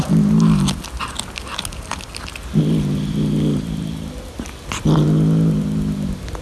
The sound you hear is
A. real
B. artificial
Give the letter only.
A